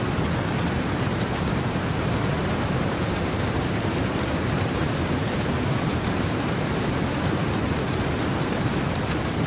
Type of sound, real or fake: fake